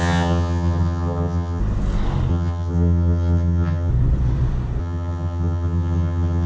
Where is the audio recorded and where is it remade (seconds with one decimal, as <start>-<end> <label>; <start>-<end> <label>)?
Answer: 0.0-1.6 remade; 1.6-2.3 recorded; 2.3-3.9 remade; 3.9-4.8 recorded; 4.8-6.5 remade